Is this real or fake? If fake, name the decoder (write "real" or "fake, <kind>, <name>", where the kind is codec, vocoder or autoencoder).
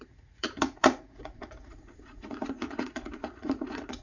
fake, vocoder, Vocos